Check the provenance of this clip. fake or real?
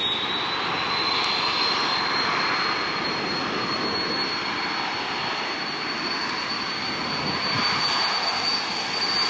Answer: real